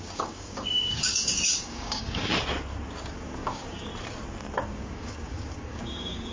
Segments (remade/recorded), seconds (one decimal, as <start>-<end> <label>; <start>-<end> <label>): 0.0-2.3 remade; 2.3-3.0 recorded; 3.0-3.9 remade; 3.9-4.6 recorded; 4.6-6.3 remade